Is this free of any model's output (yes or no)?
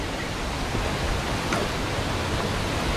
yes